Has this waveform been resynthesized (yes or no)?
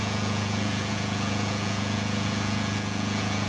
yes